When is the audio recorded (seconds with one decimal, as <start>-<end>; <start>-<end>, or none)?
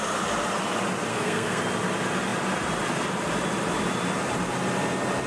0.0-1.1; 1.6-5.3